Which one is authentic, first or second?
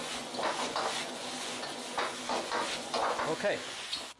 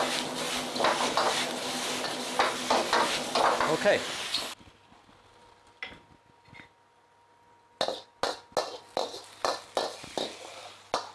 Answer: second